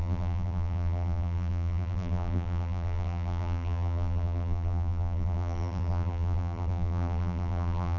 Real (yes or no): no